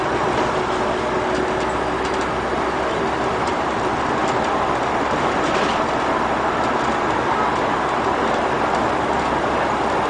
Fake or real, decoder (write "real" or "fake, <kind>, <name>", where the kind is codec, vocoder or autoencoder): real